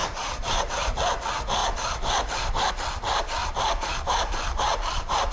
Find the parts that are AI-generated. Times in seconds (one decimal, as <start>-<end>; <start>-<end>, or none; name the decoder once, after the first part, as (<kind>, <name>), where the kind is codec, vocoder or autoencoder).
0.0-1.0 (vocoder, BigVGAN v2); 1.6-2.7; 3.4-5.3